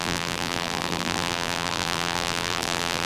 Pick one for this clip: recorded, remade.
remade